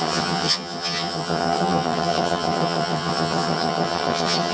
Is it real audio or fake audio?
fake